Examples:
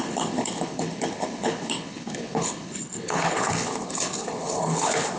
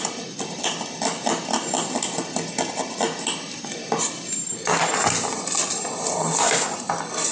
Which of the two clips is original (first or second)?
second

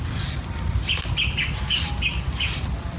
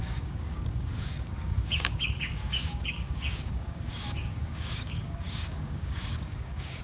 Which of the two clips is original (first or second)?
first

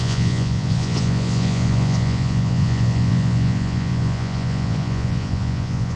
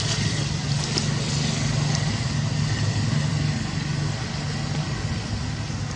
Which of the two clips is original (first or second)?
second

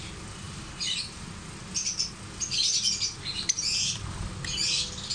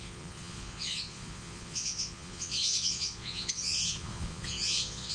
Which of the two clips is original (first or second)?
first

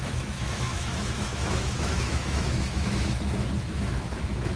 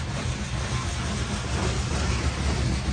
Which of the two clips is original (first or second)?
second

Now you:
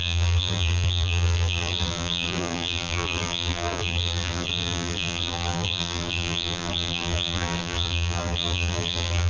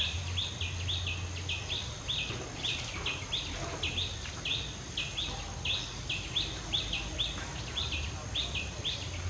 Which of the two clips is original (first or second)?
second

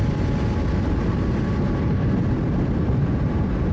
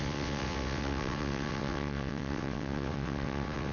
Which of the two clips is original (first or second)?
first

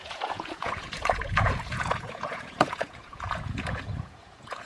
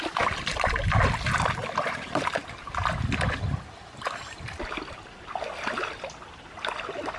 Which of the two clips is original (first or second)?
second